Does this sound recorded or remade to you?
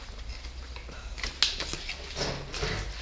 recorded